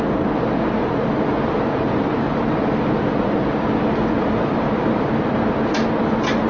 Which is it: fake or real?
real